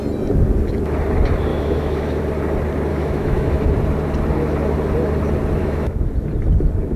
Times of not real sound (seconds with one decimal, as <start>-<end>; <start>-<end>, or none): 1.5-2.2; 2.9-3.7; 5.6-6.1